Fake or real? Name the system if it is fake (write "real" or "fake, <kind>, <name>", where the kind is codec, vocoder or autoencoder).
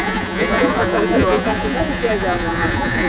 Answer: fake, vocoder, Vocos